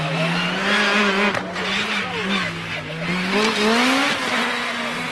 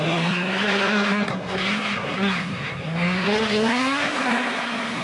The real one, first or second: first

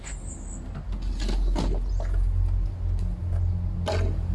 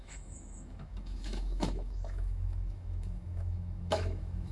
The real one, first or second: first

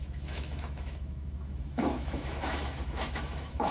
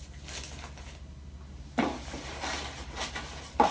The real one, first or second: second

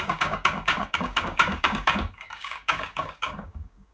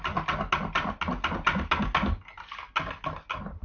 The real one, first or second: second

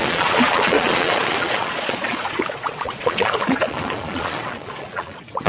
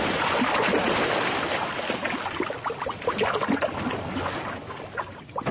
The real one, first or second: second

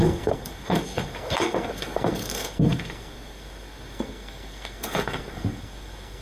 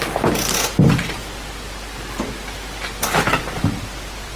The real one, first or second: second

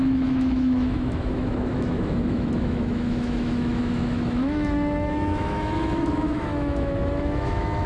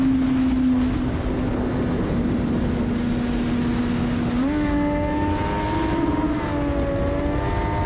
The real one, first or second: second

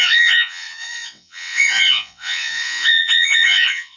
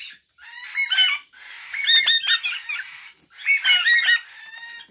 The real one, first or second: second